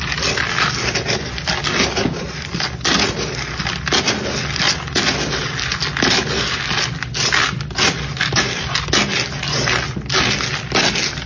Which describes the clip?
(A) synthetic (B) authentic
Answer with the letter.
B